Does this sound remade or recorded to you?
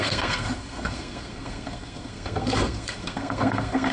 remade